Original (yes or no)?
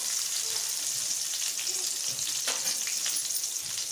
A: yes